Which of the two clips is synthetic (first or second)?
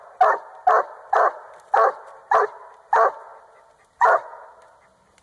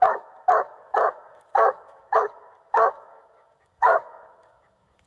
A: second